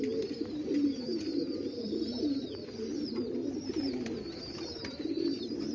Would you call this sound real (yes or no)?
no